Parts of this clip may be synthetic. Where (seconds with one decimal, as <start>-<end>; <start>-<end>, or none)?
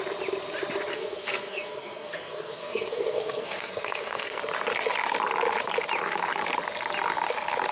0.9-4.4